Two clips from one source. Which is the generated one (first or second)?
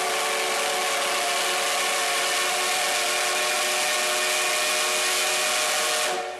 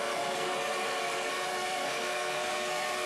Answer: second